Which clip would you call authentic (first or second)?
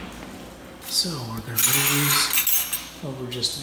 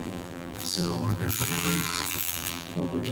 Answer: first